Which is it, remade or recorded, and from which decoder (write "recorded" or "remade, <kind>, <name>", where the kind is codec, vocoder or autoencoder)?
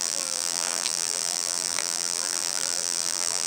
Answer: remade, vocoder, BigVGAN v2